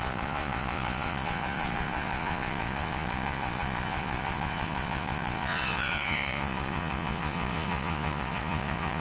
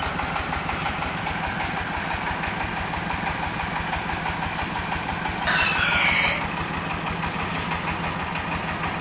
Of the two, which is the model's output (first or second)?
first